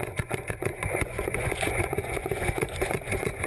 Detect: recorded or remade remade